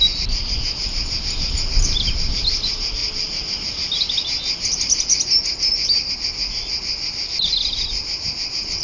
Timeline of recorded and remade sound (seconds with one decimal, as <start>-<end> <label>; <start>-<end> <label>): 0.0-8.8 recorded